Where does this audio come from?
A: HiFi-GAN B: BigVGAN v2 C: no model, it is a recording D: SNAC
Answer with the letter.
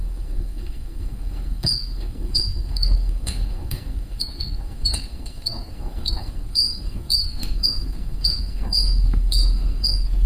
D